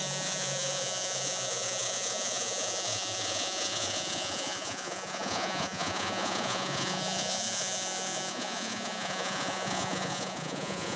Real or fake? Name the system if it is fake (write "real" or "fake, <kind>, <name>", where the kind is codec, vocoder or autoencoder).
fake, vocoder, Vocos